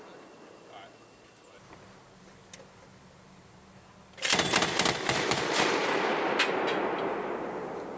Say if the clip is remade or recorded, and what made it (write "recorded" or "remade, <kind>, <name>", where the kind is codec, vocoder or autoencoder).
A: recorded